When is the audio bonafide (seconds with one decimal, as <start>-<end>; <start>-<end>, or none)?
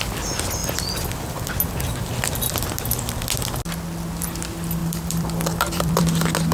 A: 0.0-0.6; 1.5-4.8; 6.0-6.5